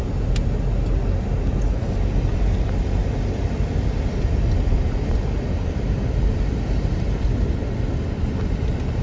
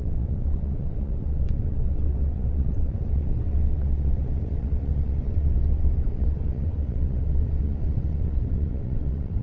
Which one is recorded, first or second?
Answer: first